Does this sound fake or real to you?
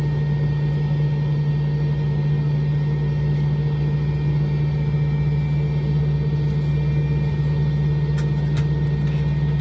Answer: real